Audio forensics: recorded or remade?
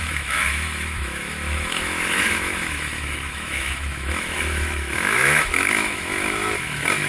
remade